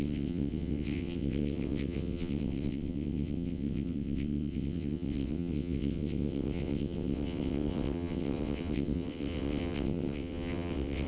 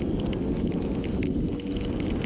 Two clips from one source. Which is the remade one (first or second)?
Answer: first